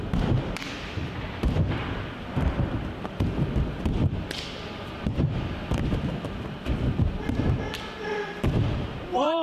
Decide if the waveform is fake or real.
fake